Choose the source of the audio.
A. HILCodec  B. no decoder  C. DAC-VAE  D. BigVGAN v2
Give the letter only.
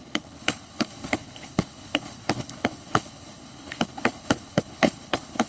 A